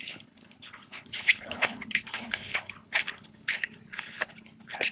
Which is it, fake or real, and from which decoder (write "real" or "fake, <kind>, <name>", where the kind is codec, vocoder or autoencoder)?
fake, codec, HILCodec